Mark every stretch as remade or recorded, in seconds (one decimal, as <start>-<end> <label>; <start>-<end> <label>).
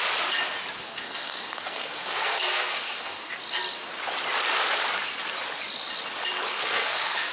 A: 0.0-0.9 recorded; 0.9-3.4 remade; 3.4-6.5 recorded; 6.5-7.3 remade